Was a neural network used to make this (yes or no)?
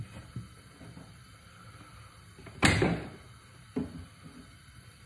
no